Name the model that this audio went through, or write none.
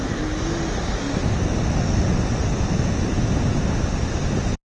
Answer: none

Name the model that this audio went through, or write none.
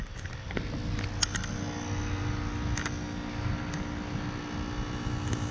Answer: none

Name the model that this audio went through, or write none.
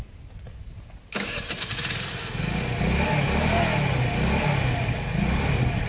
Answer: none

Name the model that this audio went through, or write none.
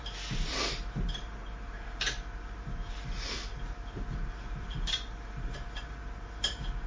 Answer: vocoder, BigVGAN v2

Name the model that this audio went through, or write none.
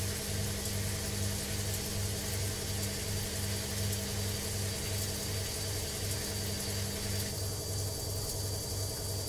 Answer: none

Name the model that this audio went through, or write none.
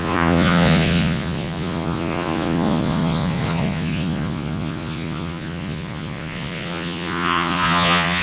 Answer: vocoder, Vocos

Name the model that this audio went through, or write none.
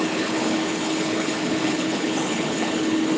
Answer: codec, HILCodec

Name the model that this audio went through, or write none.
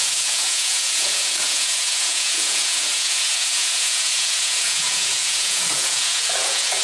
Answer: vocoder, Vocos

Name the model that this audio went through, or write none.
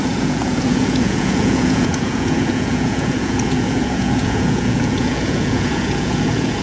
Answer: vocoder, Vocos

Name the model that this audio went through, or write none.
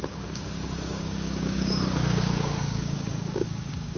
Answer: codec, DAC